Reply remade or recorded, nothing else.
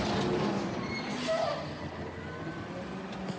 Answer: recorded